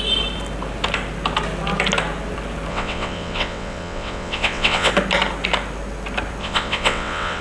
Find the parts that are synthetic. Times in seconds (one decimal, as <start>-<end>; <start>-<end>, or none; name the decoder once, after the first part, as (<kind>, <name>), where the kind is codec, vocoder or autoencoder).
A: 2.7-4.9 (vocoder, WaveNeXt); 6.4-7.4